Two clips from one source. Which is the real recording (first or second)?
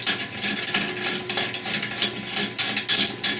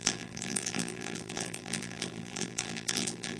first